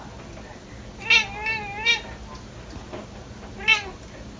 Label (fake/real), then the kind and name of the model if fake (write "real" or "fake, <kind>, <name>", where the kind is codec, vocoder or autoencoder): real